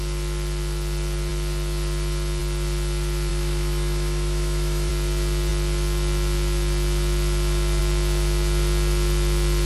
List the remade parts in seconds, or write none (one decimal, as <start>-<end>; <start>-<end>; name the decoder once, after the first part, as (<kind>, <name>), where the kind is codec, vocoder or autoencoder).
3.3-4.9 (autoencoder, DAC-VAE)